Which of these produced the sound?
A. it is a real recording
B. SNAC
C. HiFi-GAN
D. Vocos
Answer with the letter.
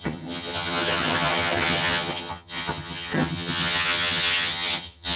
C